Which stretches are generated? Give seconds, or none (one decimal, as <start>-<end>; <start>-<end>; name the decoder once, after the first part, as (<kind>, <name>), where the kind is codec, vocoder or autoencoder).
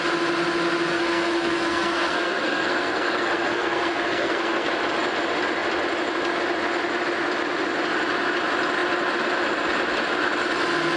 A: 0.9-4.7 (codec, SNAC)